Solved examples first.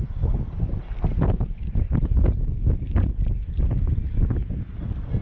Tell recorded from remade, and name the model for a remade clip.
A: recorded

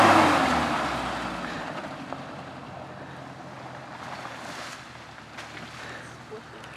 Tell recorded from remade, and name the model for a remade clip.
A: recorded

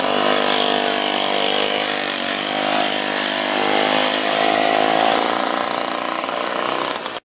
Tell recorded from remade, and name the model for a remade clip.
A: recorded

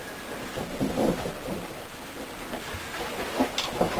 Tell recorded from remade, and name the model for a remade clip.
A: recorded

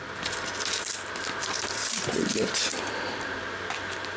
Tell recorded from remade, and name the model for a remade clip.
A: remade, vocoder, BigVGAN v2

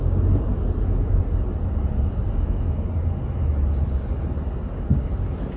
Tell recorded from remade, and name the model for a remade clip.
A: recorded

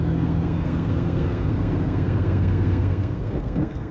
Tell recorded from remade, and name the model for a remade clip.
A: remade, codec, SNAC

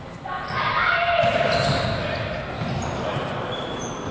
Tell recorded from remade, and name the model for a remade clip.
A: recorded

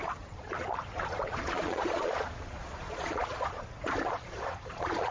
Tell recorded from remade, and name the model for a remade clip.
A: remade, vocoder, Vocos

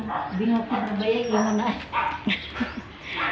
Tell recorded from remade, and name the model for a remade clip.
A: recorded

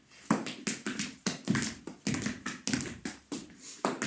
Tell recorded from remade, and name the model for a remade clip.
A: recorded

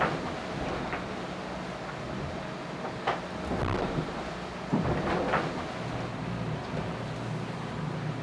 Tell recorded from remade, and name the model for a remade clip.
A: recorded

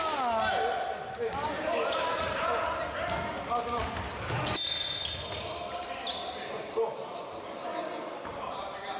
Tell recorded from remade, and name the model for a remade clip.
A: recorded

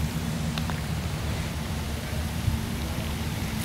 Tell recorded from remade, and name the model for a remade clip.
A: remade, vocoder, BigVGAN v2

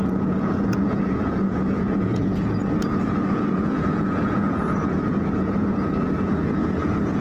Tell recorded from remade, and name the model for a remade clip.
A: remade, vocoder, Vocos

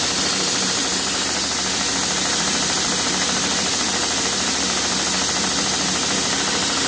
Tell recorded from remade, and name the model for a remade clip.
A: remade, vocoder, BigVGAN v2